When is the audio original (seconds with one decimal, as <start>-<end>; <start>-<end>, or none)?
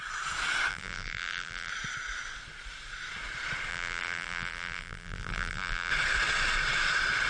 0.0-0.7; 1.7-3.7; 5.9-7.3